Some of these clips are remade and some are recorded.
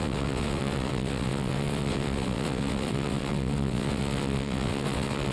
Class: remade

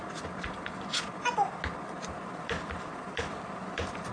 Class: recorded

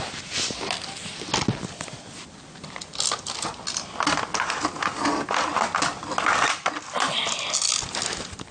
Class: recorded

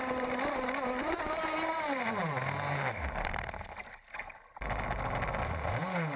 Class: recorded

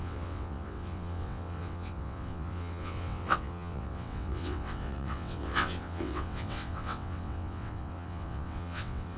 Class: remade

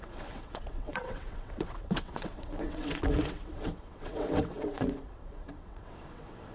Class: remade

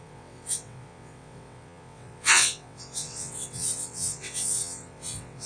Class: remade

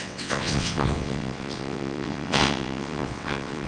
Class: remade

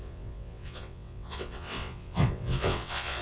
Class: remade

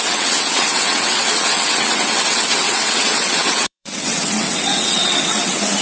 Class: remade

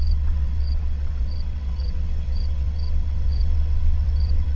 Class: remade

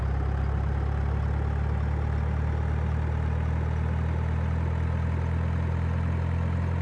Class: recorded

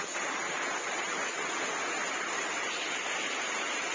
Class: recorded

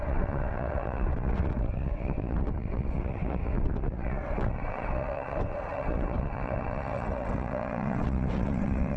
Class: remade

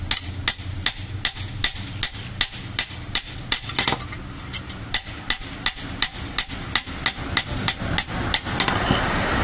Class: recorded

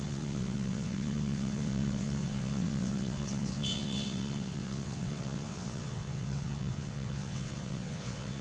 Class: remade